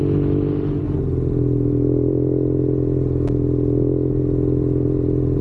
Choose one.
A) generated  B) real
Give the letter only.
B